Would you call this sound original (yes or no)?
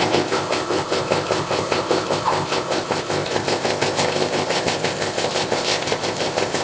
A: no